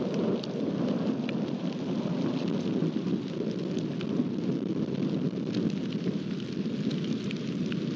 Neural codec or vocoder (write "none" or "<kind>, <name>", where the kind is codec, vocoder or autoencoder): none